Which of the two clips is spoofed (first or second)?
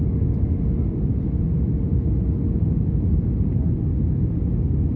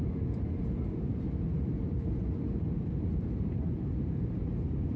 second